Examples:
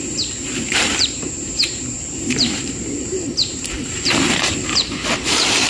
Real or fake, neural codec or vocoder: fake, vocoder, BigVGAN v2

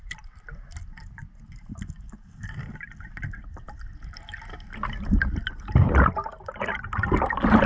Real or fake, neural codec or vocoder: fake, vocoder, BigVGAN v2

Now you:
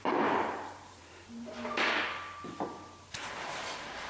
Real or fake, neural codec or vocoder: fake, vocoder, BigVGAN v2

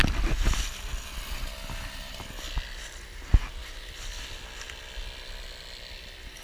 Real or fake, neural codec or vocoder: real